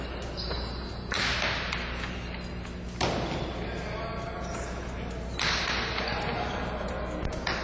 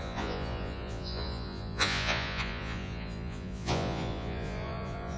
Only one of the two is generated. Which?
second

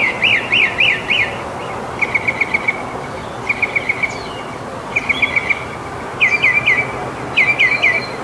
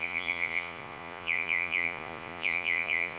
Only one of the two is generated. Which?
second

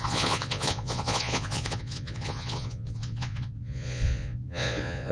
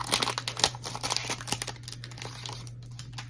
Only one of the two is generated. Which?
first